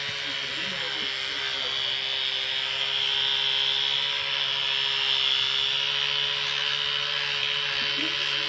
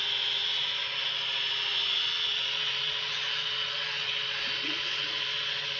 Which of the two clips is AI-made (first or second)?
second